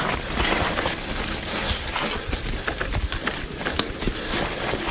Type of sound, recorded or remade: recorded